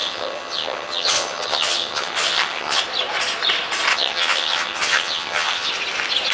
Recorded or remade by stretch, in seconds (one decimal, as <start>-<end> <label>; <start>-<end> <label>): 0.0-2.8 remade; 2.8-3.9 recorded; 3.9-5.7 remade; 5.7-6.3 recorded